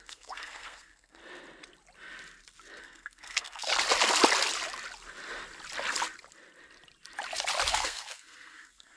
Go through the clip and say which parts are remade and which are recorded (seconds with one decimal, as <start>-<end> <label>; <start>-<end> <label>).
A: 0.0-1.2 remade; 1.2-2.8 recorded; 2.8-3.7 remade; 3.7-7.7 recorded; 7.7-9.0 remade